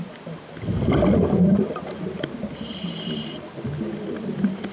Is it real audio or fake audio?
real